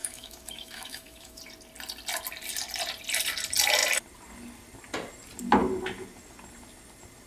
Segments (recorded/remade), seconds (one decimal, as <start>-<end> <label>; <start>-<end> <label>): 0.0-1.4 remade; 1.4-7.3 recorded